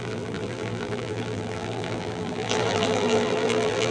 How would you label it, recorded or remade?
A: remade